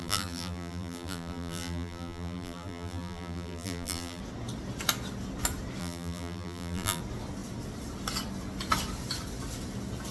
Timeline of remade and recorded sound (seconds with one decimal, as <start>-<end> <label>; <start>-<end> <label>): 0.0-4.2 remade; 4.2-5.8 recorded; 5.8-7.0 remade; 7.0-10.1 recorded